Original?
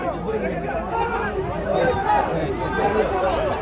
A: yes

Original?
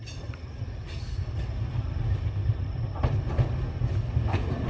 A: yes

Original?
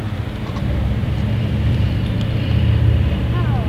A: no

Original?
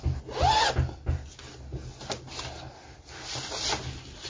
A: yes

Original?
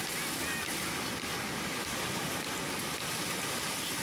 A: yes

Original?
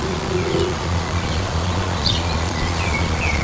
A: no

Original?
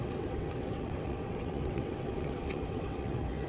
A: no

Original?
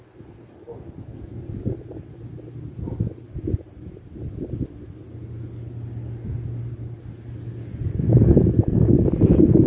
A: yes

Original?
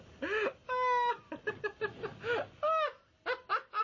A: yes